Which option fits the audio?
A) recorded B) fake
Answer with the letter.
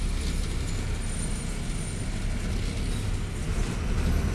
A